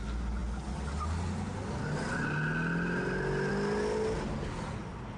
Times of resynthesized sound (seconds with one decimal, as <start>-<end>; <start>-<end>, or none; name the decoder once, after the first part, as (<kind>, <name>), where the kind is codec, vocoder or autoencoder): none